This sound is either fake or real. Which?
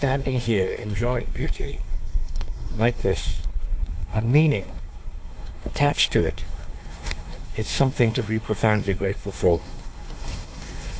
fake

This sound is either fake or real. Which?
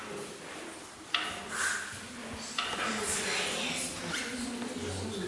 real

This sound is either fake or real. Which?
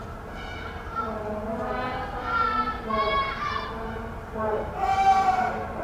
fake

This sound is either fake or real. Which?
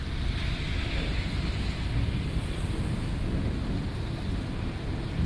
real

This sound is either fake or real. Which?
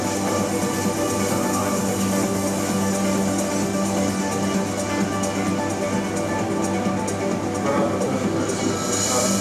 real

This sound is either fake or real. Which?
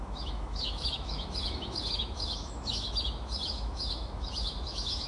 fake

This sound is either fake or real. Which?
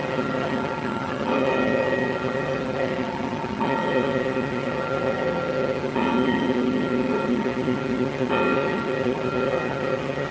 fake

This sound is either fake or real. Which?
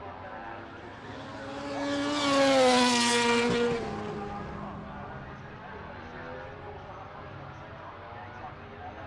real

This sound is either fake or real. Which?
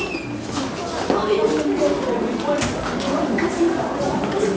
real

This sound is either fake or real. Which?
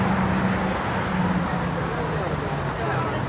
real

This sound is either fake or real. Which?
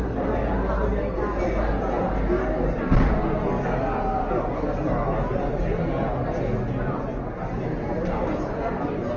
real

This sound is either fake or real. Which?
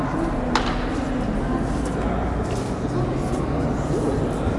real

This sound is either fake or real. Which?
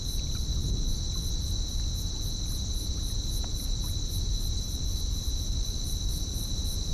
real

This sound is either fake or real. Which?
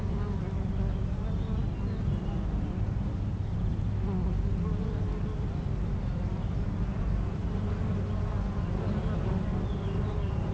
real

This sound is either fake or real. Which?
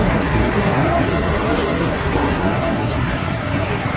fake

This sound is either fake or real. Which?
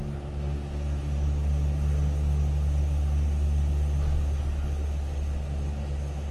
real